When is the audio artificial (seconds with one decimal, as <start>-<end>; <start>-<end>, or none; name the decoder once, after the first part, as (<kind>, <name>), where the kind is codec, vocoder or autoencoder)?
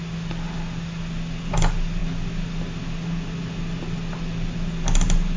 none